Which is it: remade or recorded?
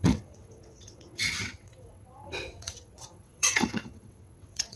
remade